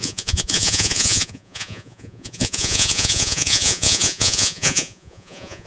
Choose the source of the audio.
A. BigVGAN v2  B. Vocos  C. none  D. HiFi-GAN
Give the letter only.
B